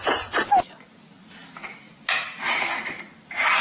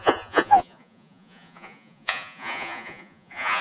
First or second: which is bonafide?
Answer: first